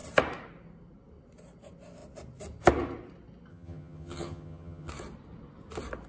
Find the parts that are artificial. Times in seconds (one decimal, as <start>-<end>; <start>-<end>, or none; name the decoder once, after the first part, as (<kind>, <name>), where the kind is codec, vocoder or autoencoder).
3.5-4.9 (vocoder, HiFi-GAN)